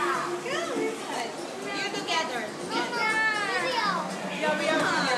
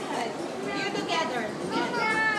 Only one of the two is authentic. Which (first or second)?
first